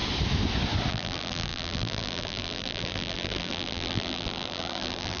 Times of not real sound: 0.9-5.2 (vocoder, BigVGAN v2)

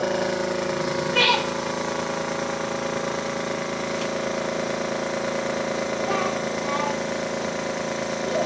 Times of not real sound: none

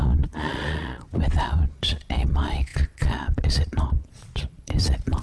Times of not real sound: 0.0-5.2 (vocoder, Vocos)